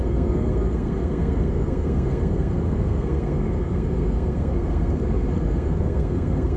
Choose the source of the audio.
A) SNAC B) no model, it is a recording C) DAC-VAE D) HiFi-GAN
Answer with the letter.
A